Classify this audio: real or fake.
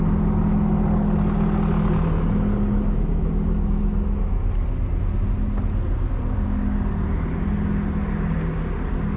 real